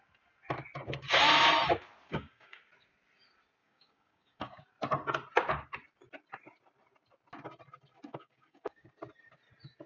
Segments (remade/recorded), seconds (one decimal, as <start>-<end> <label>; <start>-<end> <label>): 0.0-2.1 recorded; 2.1-2.6 remade; 2.6-3.6 recorded; 3.6-4.6 remade; 4.6-8.1 recorded; 8.1-8.9 remade; 8.9-9.9 recorded